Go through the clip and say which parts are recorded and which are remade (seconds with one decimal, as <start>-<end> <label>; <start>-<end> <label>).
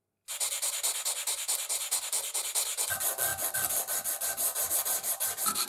0.0-3.3 recorded; 3.3-4.7 remade; 4.7-5.7 recorded